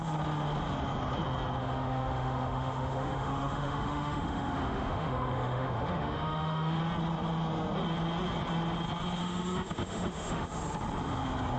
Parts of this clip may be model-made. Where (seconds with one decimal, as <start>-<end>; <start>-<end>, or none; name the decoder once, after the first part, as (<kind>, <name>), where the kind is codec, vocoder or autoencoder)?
1.6-6.8 (autoencoder, DAC-VAE); 9.2-10.6